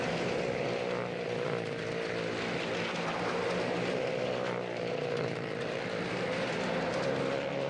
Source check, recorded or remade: recorded